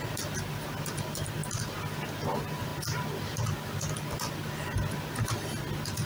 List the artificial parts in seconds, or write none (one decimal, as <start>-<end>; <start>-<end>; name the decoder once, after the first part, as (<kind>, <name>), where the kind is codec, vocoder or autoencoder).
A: none